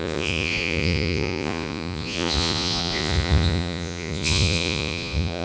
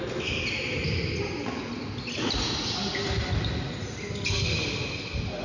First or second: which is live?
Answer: second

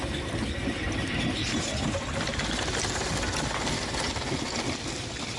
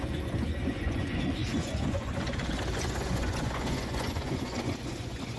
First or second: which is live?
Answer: first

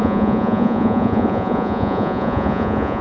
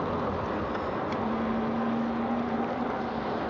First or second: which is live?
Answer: second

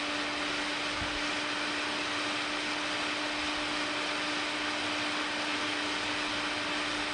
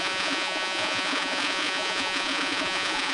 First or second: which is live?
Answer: first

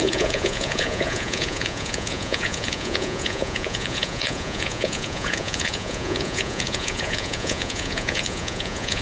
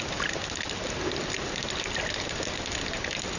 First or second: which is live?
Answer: second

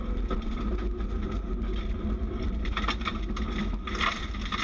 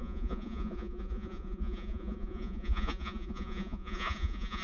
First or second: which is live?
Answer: first